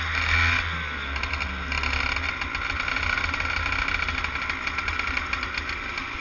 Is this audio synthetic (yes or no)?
no